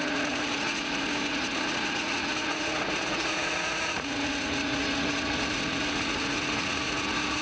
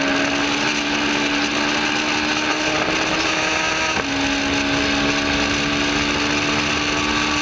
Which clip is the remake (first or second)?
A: first